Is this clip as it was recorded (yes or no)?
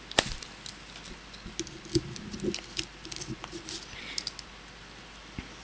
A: yes